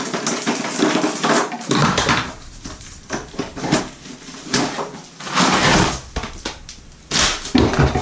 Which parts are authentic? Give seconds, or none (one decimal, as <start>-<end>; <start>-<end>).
0.0-1.8; 3.8-8.0